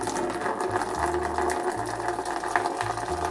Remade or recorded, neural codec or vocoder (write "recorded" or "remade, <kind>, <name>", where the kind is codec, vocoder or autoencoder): recorded